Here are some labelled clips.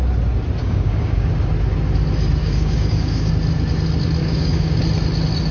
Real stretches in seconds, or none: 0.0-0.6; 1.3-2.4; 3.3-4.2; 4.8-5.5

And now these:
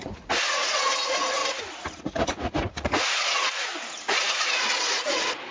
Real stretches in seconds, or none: 1.4-2.0; 3.7-4.2

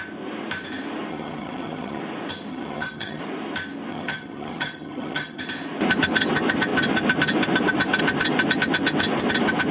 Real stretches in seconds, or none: 0.0-1.1; 2.0-2.5; 3.2-3.9; 5.4-9.7

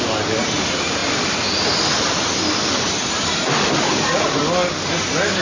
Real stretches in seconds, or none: 0.0-3.9; 4.4-5.4

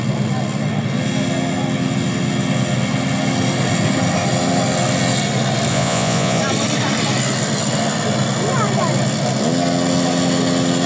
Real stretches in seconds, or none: 0.0-5.7; 6.4-10.9

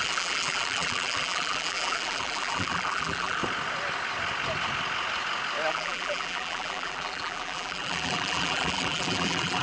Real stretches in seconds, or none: 3.4-5.7